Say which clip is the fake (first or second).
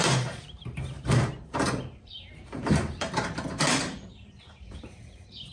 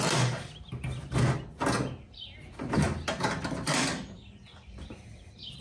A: first